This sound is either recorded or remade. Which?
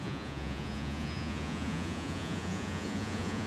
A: remade